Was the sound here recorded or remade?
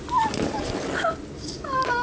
recorded